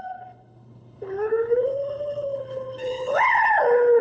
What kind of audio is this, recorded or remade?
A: remade